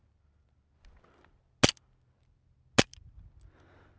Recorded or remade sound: recorded